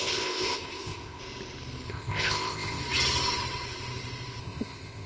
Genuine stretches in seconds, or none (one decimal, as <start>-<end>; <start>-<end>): 1.2-1.9; 2.8-4.4